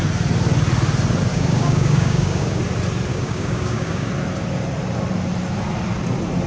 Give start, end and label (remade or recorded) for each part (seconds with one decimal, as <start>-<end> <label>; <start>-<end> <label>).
0.0-1.3 recorded; 1.3-2.6 remade; 2.6-3.1 recorded; 3.1-4.1 remade; 4.1-6.5 recorded